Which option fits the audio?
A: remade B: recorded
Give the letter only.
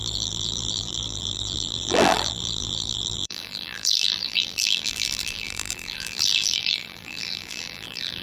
A